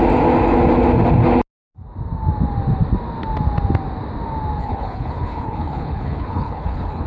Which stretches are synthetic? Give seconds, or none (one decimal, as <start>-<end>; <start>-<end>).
4.6-7.1